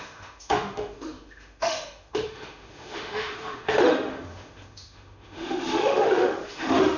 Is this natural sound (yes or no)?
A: no